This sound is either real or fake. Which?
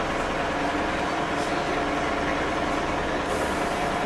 real